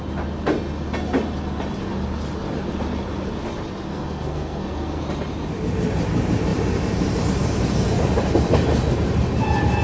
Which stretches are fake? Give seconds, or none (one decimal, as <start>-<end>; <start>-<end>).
3.9-5.0